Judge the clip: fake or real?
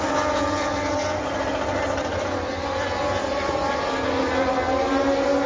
real